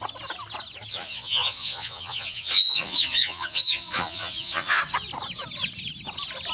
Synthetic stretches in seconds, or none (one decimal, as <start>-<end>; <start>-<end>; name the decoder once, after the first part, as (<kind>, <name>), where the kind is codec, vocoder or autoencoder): 0.9-4.8 (vocoder, Vocos)